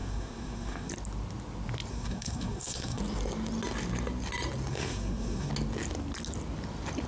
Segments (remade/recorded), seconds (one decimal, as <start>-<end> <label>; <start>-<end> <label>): 0.0-0.9 remade; 0.9-1.9 recorded; 1.9-3.0 remade; 3.0-4.7 recorded; 4.7-5.5 remade; 5.5-7.1 recorded

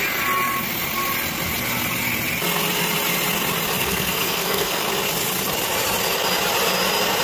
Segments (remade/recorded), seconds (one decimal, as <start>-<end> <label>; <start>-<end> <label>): 0.0-3.8 recorded; 3.8-4.8 remade; 4.8-7.2 recorded

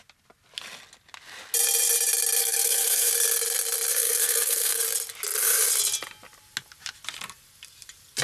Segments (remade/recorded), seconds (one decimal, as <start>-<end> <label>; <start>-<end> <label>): 0.0-2.4 recorded; 2.4-3.1 remade; 3.1-3.9 recorded; 3.9-4.8 remade; 4.8-8.2 recorded